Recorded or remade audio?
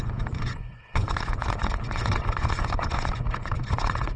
remade